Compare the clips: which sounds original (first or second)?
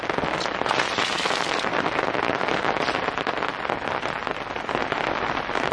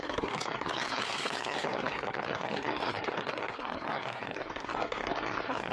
first